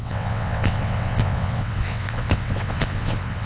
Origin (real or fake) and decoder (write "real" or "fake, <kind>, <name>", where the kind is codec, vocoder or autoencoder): fake, vocoder, WaveNeXt